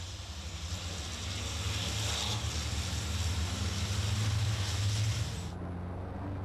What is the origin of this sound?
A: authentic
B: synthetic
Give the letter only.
A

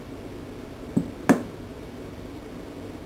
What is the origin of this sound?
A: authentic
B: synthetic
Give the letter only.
A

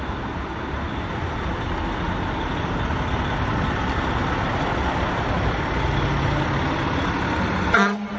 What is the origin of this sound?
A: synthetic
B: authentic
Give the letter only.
B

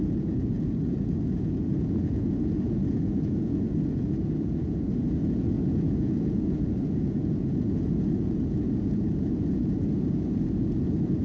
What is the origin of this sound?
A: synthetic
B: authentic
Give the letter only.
A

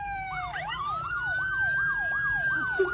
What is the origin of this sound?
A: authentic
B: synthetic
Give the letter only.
B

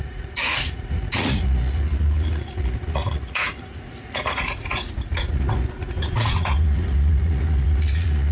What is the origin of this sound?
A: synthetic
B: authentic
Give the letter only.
A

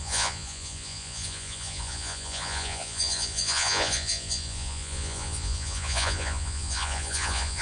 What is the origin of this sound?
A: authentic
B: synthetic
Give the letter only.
B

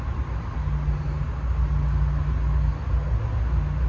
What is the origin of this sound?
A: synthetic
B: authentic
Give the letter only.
B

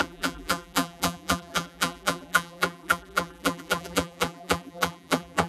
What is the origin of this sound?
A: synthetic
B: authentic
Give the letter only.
A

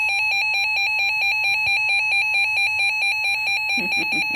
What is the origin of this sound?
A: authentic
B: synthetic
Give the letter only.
A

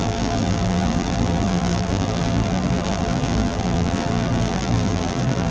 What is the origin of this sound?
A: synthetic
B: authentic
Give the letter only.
A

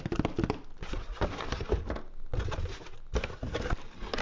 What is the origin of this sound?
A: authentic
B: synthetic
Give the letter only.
A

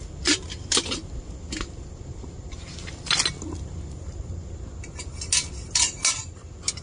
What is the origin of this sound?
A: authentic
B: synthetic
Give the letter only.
A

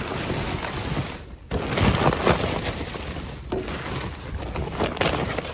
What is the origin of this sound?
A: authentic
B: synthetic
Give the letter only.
A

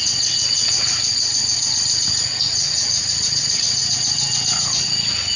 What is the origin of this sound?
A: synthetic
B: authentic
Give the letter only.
A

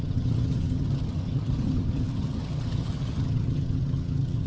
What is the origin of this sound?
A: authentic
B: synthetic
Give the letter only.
B